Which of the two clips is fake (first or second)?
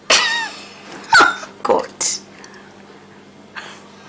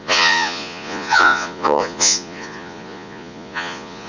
second